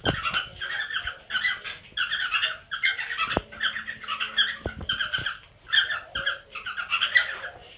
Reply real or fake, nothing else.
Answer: real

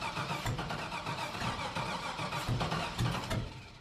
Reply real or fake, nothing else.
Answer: fake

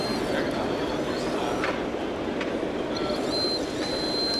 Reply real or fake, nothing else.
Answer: real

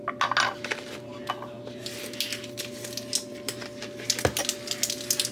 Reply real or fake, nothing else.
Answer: real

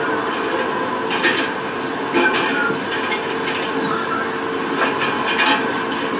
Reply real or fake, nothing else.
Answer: real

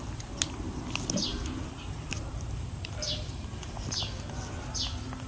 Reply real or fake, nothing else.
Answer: real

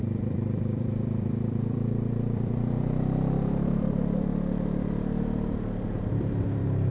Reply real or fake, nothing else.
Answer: fake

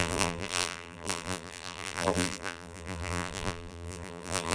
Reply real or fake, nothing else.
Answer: fake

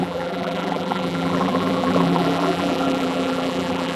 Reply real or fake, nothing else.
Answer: fake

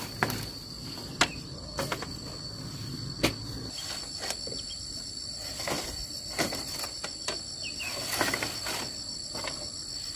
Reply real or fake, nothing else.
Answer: real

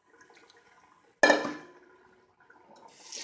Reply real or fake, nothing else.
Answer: real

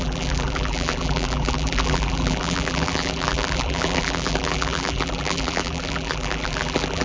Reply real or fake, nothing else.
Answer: fake